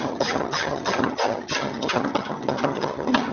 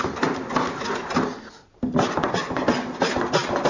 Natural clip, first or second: second